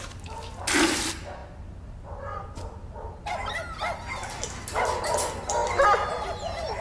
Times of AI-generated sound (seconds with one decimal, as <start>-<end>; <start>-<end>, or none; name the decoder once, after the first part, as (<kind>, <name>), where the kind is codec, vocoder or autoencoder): none